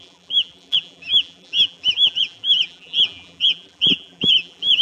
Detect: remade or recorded remade